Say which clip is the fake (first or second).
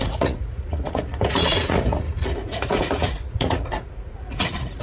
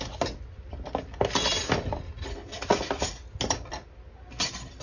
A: first